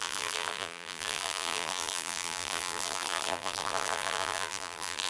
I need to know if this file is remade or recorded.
remade